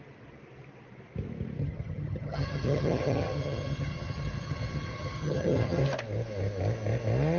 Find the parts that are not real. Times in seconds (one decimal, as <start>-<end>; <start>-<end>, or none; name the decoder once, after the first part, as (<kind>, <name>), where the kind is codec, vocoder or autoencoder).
1.6-5.8 (vocoder, HiFi-GAN)